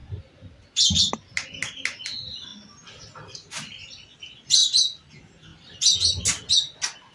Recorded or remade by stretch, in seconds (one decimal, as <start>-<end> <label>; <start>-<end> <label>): 0.0-7.1 recorded